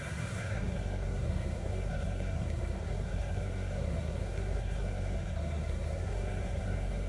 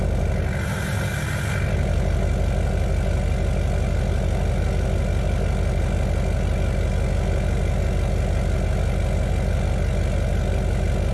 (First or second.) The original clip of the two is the second